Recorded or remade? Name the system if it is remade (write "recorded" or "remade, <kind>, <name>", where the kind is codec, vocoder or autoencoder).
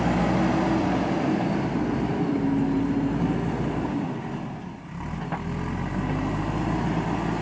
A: recorded